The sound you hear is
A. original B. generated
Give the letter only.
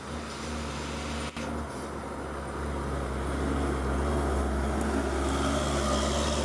A